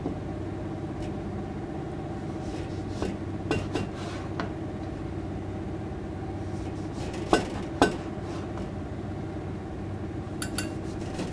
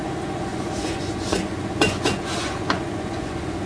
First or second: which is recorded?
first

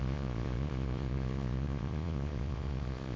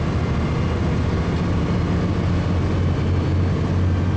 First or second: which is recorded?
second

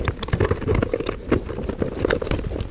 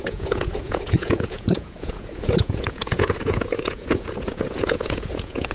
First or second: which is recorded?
first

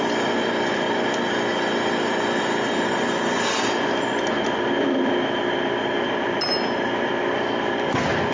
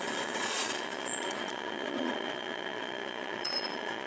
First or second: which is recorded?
first